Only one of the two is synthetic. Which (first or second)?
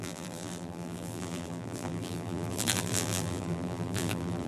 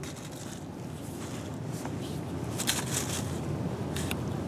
first